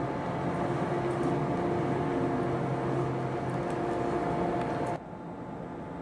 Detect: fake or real real